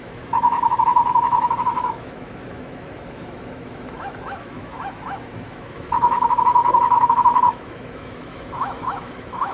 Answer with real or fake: fake